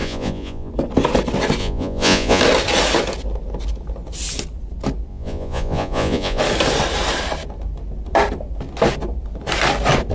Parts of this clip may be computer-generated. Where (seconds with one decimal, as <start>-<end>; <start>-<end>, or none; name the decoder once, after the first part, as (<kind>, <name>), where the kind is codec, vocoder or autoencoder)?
0.0-0.7 (vocoder, Vocos); 1.6-2.4; 5.1-6.4